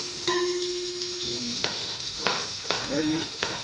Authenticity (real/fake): fake